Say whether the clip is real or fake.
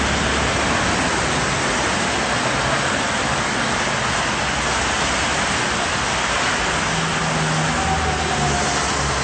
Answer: real